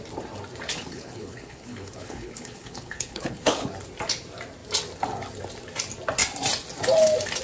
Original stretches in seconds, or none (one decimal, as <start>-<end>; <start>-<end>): 0.0-0.7; 3.7-7.4